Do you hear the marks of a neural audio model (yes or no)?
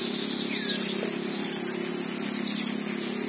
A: no